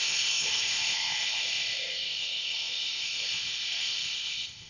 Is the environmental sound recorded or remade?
remade